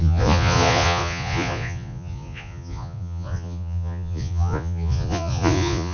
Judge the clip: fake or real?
fake